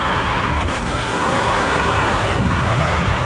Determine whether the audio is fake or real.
fake